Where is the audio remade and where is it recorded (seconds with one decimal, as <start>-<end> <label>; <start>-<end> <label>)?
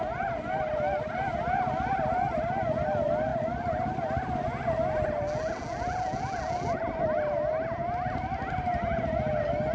0.0-9.7 recorded